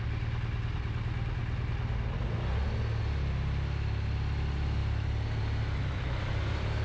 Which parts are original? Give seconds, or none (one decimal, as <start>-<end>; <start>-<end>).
0.0-6.8